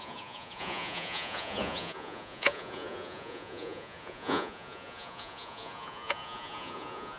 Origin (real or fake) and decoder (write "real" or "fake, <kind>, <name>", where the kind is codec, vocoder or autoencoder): fake, vocoder, Vocos